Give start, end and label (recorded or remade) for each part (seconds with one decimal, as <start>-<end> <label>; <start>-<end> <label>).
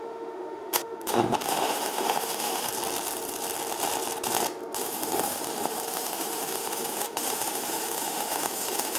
0.0-2.7 remade; 2.7-4.8 recorded; 4.8-9.0 remade